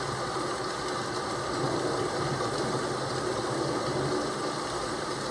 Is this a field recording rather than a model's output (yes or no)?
yes